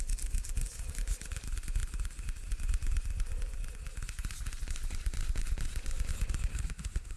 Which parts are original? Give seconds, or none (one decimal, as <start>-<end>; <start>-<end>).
0.0-6.5